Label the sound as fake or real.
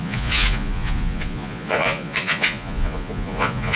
fake